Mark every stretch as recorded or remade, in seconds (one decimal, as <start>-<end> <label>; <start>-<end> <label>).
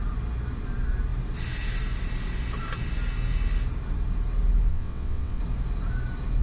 0.0-4.7 recorded; 4.7-5.4 remade; 5.4-6.4 recorded